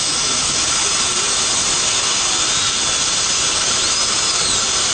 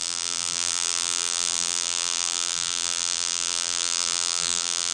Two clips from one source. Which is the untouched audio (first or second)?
first